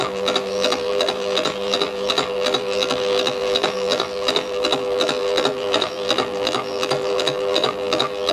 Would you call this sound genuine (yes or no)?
no